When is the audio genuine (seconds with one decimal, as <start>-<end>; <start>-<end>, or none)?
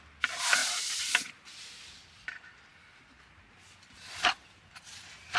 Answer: 0.0-0.6; 1.2-5.4